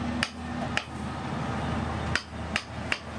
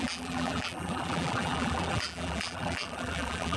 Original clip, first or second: first